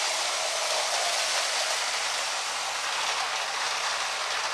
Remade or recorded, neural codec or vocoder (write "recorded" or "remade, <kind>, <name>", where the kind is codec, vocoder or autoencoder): recorded